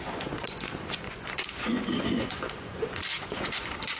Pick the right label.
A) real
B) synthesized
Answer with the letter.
B